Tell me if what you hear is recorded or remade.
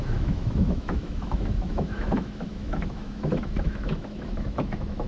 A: remade